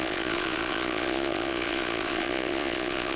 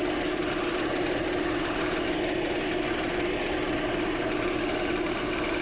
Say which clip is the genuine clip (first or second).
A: second